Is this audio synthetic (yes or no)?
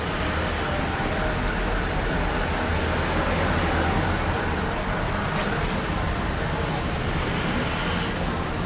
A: no